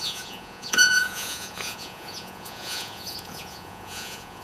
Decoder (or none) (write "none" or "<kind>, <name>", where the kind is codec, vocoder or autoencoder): vocoder, Vocos